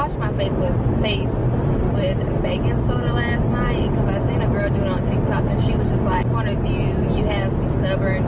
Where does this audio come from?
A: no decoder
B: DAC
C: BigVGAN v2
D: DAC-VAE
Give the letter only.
A